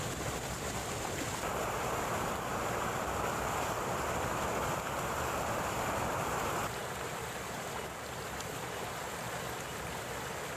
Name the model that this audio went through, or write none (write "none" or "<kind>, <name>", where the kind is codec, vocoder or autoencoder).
none